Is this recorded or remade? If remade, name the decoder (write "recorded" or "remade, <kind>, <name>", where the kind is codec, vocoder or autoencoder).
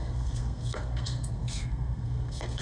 remade, codec, SNAC